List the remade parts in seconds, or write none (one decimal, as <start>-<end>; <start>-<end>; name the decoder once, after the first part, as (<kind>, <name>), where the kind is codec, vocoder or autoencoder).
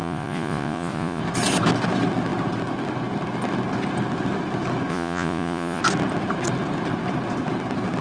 0.0-1.2 (vocoder, Vocos); 4.9-5.8